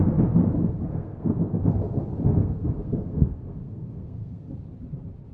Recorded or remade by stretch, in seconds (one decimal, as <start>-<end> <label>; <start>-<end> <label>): 0.0-0.9 recorded; 0.9-1.5 remade; 1.5-2.4 recorded; 2.4-4.5 remade; 4.5-5.3 recorded